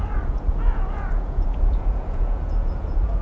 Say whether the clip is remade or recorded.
remade